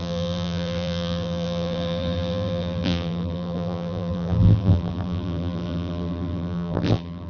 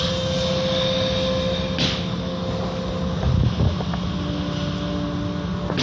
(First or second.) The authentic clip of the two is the second